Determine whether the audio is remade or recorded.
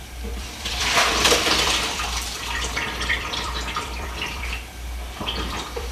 remade